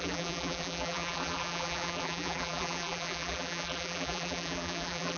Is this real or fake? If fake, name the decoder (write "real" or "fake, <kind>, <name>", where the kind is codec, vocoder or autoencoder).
fake, vocoder, BigVGAN v2